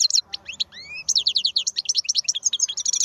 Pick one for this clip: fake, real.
fake